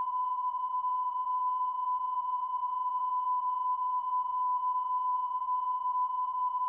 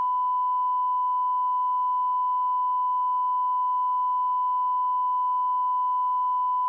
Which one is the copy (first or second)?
first